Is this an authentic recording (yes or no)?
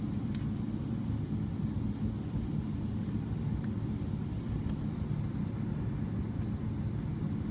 yes